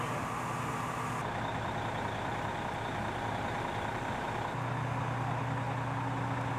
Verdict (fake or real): real